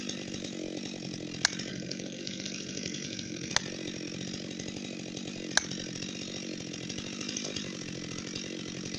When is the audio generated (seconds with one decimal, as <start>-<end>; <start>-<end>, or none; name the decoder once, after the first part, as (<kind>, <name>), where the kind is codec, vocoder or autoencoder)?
1.7-3.5 (codec, SNAC)